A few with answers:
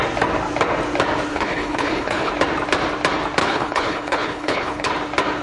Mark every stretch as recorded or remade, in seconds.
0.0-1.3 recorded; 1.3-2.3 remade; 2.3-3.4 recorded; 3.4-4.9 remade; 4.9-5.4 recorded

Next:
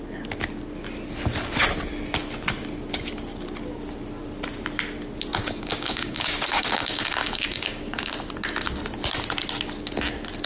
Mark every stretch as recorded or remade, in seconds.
0.0-5.4 recorded; 5.4-8.1 remade; 8.1-10.5 recorded

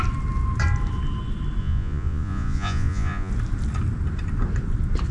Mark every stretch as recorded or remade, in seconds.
0.0-1.6 recorded; 1.6-3.3 remade; 3.3-5.1 recorded